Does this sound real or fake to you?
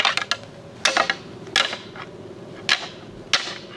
real